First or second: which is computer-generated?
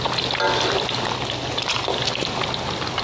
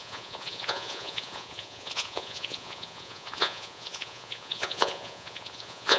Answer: second